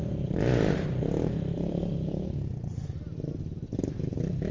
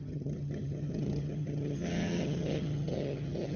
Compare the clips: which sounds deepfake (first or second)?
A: second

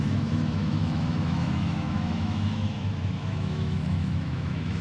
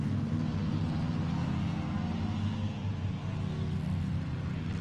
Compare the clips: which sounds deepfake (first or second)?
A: first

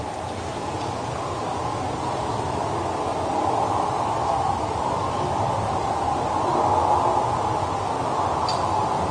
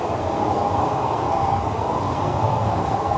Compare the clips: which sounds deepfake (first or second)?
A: second